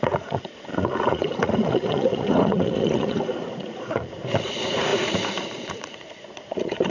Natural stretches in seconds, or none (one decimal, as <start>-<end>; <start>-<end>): none